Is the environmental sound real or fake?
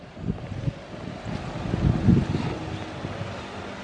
real